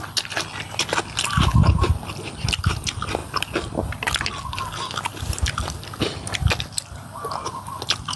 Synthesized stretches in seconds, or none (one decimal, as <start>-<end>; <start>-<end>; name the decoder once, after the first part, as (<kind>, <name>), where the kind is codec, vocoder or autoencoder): none